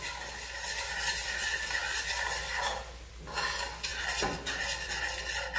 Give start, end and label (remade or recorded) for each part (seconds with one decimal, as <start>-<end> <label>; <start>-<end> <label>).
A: 0.0-5.6 recorded